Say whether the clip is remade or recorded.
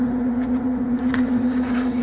remade